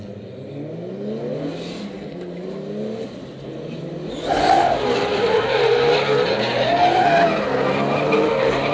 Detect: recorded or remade recorded